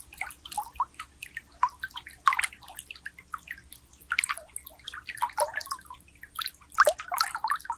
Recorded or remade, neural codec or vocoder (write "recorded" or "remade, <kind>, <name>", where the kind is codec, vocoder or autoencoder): recorded